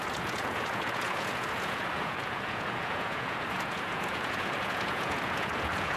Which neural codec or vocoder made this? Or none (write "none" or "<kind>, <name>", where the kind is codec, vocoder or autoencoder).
vocoder, Vocos